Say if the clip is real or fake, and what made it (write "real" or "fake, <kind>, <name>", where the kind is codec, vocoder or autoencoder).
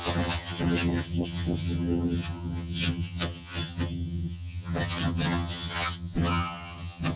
fake, vocoder, HiFi-GAN